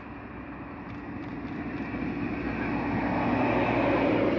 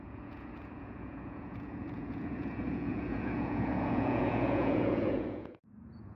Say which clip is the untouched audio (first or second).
first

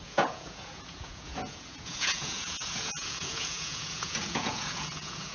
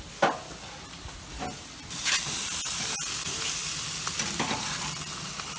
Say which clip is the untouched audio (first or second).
second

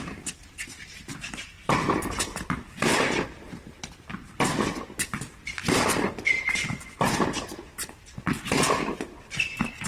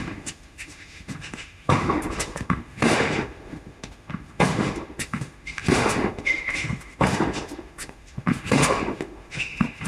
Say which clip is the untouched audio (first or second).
first